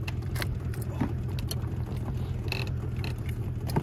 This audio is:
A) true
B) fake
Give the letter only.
A